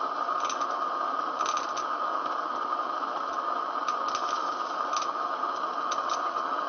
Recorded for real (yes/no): yes